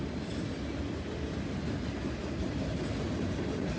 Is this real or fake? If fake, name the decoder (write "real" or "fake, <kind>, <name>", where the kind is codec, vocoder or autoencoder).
real